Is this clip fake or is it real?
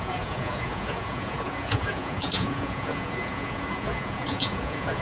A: fake